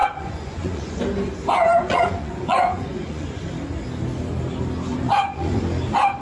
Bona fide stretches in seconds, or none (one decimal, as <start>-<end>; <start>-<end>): 1.0-1.8; 3.5-4.9; 5.6-6.2